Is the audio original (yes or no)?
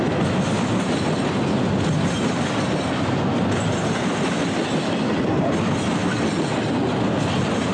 yes